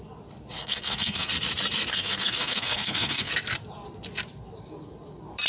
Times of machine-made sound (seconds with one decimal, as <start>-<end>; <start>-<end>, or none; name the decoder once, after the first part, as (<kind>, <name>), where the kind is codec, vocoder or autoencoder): 0.6-1.3 (codec, SNAC); 1.9-3.3